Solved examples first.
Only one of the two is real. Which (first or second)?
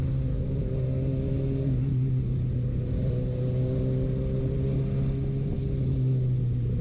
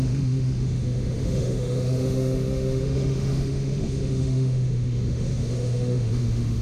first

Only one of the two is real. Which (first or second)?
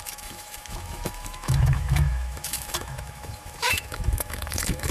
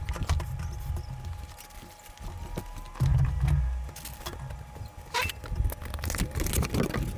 second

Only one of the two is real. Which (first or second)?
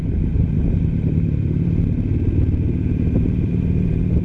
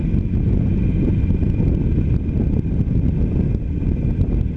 second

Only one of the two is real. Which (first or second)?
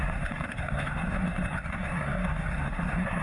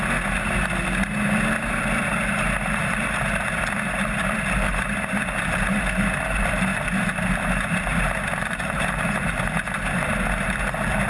second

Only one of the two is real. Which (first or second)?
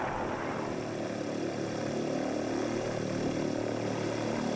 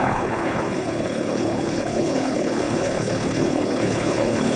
first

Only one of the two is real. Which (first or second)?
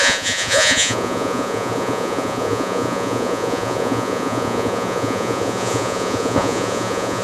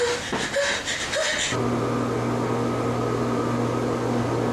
second